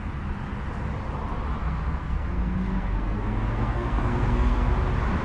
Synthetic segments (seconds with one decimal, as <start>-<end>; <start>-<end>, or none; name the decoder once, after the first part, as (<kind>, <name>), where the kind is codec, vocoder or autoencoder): 1.6-4.7 (codec, SNAC)